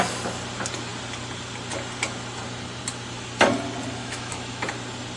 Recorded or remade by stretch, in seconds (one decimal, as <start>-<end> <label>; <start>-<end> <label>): 0.0-4.0 recorded; 4.0-4.6 remade; 4.6-5.2 recorded